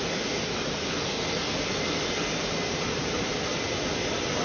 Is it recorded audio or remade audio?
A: recorded